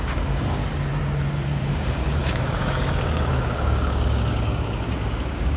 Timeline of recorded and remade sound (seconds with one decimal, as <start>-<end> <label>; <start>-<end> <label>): 0.0-0.6 remade; 0.6-1.7 recorded; 1.7-5.6 remade